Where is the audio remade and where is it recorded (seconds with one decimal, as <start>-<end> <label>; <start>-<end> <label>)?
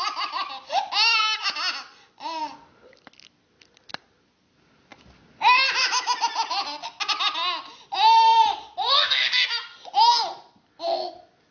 0.0-11.5 recorded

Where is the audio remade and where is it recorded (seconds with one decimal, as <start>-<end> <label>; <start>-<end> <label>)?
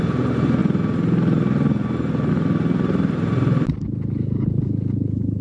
0.0-5.4 recorded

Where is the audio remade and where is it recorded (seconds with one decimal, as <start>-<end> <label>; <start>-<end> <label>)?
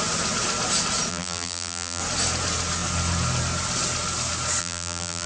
0.0-1.1 recorded; 1.1-2.0 remade; 2.0-4.6 recorded; 4.6-5.3 remade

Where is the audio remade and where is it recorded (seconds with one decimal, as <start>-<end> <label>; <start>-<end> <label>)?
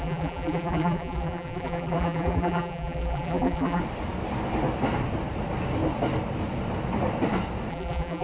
0.0-3.8 remade; 3.8-7.7 recorded; 7.7-8.2 remade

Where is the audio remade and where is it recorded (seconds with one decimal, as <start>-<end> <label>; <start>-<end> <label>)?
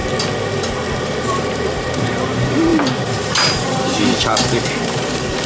0.0-1.0 recorded; 1.0-5.5 remade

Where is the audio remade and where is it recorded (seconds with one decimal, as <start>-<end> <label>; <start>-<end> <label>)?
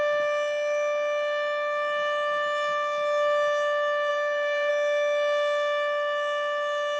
0.0-4.1 recorded; 4.1-4.7 remade; 4.7-7.0 recorded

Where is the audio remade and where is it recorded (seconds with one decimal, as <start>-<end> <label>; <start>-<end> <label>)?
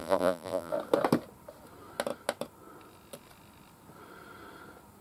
0.0-0.7 remade; 0.7-5.0 recorded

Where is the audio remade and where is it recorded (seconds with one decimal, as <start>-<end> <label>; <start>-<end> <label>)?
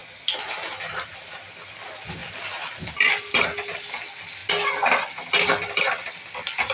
0.0-2.2 recorded; 2.2-3.3 remade; 3.3-6.7 recorded